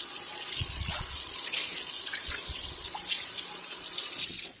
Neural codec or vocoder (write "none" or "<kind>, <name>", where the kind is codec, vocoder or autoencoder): vocoder, Vocos